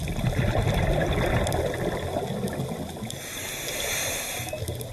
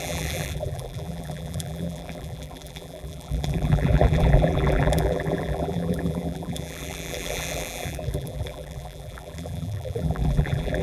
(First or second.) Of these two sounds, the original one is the first